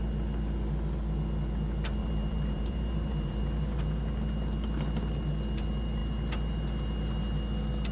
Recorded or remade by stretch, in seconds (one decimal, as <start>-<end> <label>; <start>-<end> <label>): 0.0-2.0 recorded; 2.0-3.8 remade; 3.8-7.9 recorded

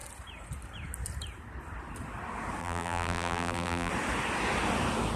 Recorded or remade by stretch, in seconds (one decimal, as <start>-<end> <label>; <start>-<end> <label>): 0.0-2.6 recorded; 2.6-3.9 remade; 3.9-5.2 recorded